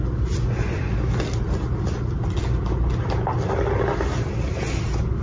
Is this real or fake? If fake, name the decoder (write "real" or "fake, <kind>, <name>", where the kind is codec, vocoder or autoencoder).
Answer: real